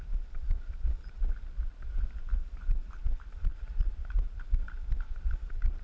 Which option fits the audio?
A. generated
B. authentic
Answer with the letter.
A